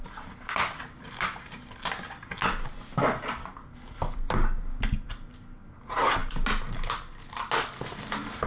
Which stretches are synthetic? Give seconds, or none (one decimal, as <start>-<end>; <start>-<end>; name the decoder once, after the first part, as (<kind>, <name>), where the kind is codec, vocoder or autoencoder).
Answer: none